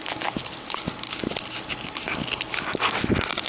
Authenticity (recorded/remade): recorded